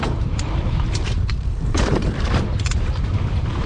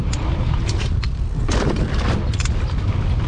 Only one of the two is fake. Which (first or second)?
first